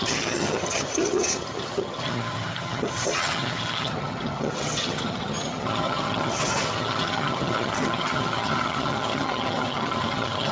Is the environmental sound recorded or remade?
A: remade